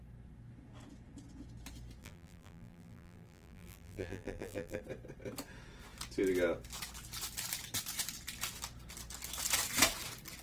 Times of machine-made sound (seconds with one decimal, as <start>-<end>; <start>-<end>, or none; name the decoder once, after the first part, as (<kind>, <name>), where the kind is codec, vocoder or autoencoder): 2.0-4.8 (vocoder, BigVGAN v2)